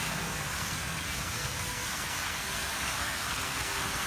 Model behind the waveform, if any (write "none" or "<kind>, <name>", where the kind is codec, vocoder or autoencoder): codec, SNAC